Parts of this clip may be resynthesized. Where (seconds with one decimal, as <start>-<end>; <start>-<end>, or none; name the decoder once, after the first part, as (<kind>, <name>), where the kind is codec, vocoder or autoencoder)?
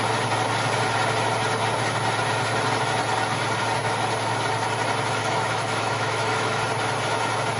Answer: 5.2-6.6 (autoencoder, DAC-VAE)